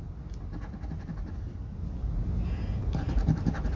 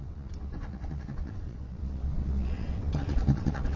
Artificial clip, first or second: second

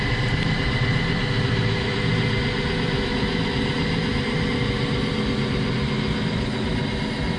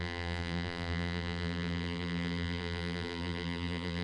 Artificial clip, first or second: second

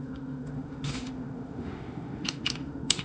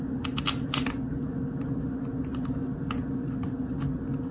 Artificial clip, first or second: first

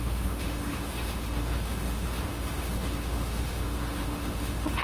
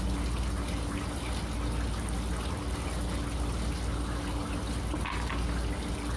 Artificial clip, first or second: first